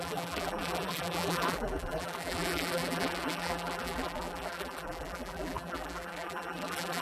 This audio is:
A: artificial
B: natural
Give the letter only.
A